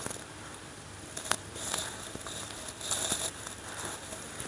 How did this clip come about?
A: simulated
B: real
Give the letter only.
B